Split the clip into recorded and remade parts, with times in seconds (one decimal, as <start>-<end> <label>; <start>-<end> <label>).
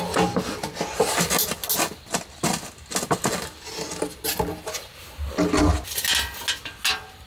0.0-7.3 recorded